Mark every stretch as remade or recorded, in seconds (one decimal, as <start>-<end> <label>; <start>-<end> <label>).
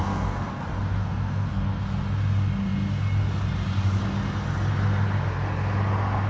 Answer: 0.0-0.6 remade; 0.6-1.0 recorded; 1.0-1.8 remade; 1.8-6.3 recorded